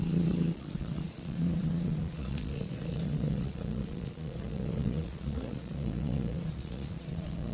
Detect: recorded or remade remade